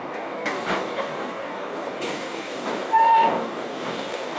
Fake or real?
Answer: fake